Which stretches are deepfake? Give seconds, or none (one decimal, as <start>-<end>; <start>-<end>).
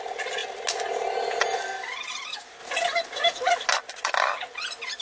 none